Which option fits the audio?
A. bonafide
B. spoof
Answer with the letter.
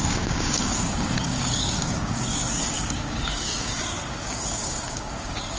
B